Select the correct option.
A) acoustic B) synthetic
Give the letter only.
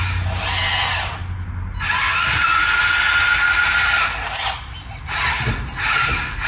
A